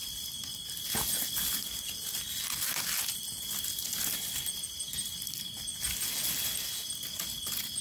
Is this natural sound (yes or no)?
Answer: yes